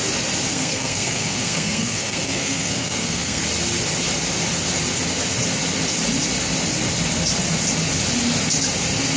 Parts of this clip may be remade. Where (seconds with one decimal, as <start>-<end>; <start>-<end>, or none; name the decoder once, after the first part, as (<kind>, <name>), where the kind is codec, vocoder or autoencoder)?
0.5-3.4 (codec, SNAC)